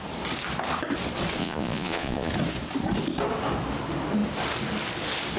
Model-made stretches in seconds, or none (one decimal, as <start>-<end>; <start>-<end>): 1.4-2.3